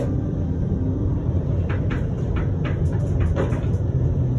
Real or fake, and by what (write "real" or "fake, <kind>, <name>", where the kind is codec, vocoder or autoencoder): real